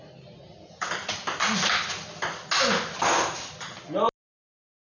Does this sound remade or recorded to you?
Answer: recorded